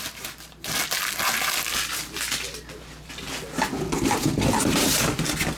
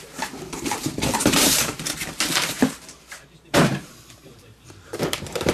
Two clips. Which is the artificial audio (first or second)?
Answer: second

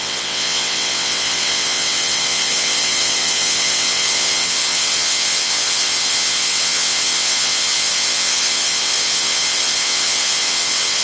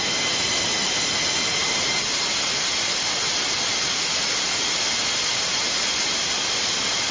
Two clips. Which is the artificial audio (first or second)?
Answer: first